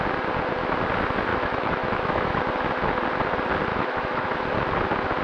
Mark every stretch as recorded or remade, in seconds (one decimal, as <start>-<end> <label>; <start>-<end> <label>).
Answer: 0.0-1.3 recorded; 1.3-2.4 remade; 2.4-3.7 recorded; 3.7-4.4 remade; 4.4-5.2 recorded